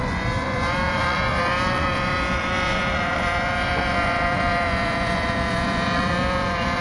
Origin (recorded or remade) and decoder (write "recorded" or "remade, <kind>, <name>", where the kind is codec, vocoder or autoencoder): remade, vocoder, Vocos